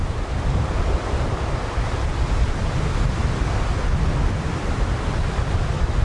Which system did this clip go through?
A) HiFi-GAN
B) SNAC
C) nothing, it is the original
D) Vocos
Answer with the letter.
C